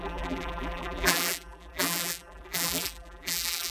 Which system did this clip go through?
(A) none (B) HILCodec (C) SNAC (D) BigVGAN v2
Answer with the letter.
D